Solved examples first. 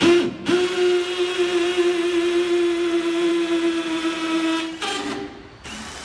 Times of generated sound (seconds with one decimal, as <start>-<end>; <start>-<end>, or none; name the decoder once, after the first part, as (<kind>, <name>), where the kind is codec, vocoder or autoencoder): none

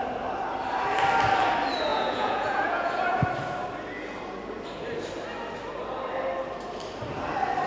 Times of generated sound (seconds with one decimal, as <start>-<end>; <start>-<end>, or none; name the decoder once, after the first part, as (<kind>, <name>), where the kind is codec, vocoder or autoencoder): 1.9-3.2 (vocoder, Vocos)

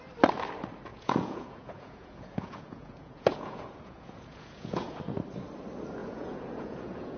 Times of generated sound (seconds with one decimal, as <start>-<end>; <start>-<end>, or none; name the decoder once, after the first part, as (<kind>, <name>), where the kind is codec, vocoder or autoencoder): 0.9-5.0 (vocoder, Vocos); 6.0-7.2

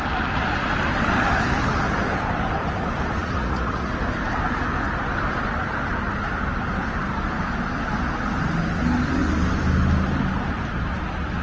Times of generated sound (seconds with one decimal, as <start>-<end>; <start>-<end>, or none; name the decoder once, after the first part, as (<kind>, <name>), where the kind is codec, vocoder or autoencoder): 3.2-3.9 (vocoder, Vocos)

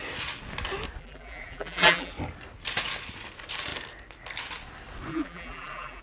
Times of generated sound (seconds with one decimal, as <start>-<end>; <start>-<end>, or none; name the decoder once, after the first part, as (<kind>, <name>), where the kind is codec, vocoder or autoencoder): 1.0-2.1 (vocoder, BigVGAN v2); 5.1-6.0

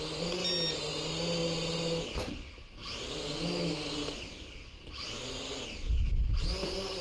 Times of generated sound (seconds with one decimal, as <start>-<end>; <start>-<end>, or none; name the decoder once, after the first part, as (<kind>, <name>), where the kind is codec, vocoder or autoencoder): none

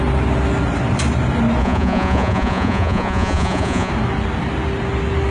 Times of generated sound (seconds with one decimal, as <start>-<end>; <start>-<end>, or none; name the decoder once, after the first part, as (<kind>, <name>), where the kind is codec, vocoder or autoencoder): 1.6-3.9 (vocoder, Vocos)

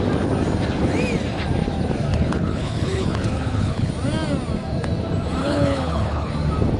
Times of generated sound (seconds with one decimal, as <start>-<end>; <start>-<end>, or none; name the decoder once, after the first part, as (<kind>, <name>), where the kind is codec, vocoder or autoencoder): 2.1-3.9 (codec, HILCodec); 5.4-6.3